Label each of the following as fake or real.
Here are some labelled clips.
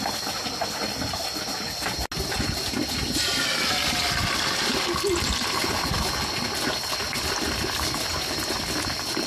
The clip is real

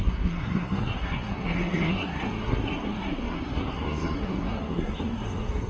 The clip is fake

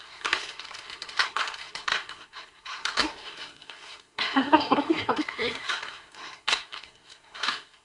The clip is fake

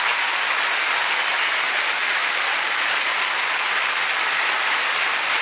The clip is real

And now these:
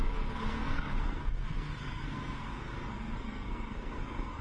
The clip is fake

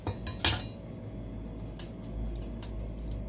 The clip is real